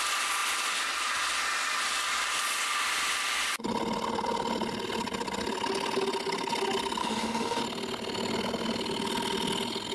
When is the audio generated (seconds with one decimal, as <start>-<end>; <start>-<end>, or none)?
7.0-7.6